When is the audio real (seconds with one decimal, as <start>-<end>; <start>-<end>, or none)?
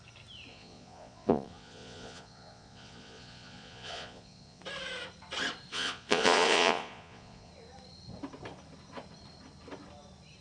0.0-0.5; 4.6-5.7; 7.5-10.4